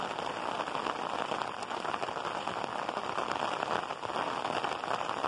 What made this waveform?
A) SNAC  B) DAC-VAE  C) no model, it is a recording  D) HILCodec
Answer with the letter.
C